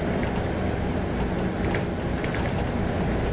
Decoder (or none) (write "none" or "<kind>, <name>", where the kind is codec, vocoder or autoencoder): none